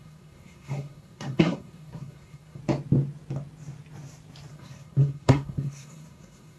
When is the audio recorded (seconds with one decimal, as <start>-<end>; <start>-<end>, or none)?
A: 2.6-4.5